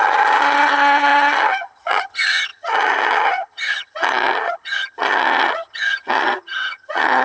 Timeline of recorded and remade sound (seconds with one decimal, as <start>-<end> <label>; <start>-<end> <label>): 0.0-7.2 remade